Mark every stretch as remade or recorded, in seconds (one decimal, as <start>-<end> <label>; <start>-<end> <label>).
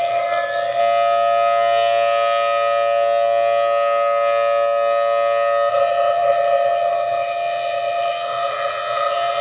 0.0-0.8 remade; 0.8-5.7 recorded; 5.7-9.4 remade